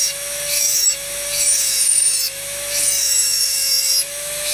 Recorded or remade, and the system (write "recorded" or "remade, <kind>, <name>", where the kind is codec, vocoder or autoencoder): remade, autoencoder, DAC-VAE